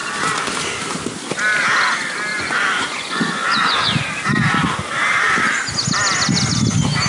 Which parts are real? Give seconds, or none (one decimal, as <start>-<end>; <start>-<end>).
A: 0.0-2.3; 4.0-7.1